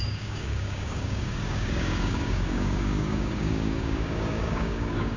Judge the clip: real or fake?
fake